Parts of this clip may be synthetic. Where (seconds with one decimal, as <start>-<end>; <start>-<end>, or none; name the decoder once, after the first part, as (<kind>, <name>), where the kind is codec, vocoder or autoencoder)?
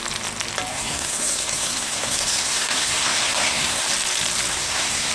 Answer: 0.7-3.8 (codec, SNAC); 4.5-5.1